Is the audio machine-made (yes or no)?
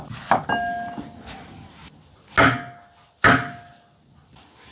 no